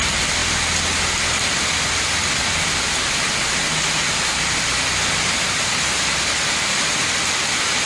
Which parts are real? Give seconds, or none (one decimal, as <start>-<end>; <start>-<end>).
0.0-7.9